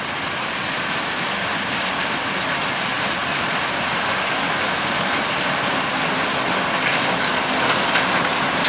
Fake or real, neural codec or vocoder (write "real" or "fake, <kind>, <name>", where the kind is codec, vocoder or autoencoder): real